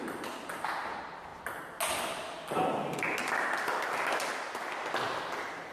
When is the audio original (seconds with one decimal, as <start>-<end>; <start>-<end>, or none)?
0.0-5.7